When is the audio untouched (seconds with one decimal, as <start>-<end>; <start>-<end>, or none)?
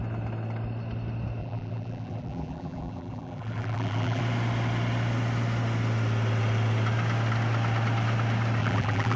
0.0-1.4; 4.2-8.6